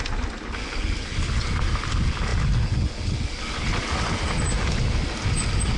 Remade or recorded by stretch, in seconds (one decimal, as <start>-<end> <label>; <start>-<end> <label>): 0.0-5.8 recorded